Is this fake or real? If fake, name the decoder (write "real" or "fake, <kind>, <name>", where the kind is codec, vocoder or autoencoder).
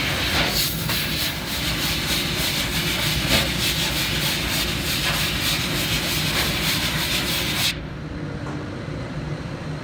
real